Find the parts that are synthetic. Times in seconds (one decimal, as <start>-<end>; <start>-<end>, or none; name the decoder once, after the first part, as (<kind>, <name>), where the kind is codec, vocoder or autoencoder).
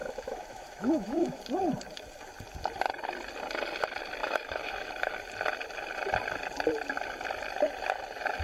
0.0-1.4 (autoencoder, DAC-VAE); 4.2-5.1